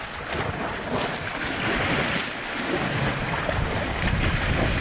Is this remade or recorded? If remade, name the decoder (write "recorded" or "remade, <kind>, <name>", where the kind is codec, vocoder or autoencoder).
recorded